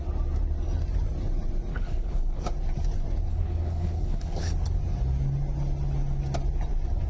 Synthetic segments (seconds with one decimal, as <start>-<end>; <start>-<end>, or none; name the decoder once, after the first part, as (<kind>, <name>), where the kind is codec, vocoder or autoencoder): 1.7-2.4 (codec, HILCodec); 3.3-4.5